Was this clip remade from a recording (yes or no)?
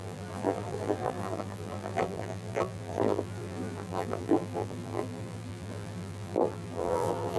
yes